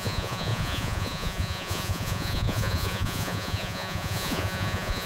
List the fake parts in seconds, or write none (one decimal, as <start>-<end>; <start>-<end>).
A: 0.0-5.1